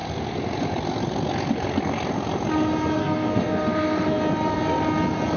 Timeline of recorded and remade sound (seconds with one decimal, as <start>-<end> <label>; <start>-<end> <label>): 0.0-3.0 recorded; 3.0-4.2 remade; 4.2-5.4 recorded